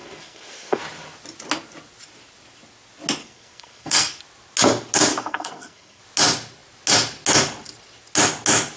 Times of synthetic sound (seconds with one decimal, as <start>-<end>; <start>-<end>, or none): 0.0-0.8; 3.2-4.2; 5.1-6.0